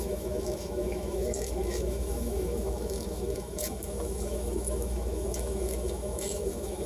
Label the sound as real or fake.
fake